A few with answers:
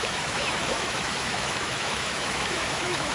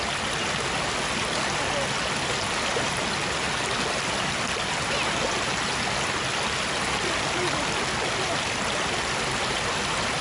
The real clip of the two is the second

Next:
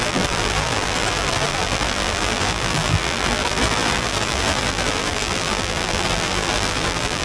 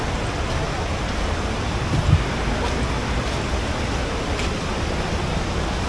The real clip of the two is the second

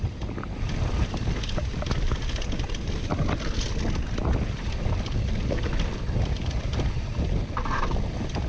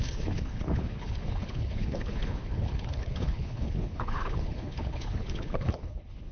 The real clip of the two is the first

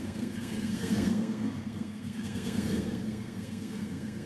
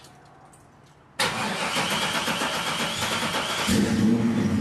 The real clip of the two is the second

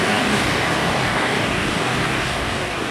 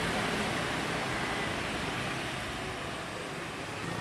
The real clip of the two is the second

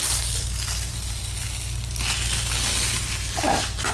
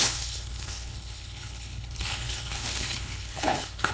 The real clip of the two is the first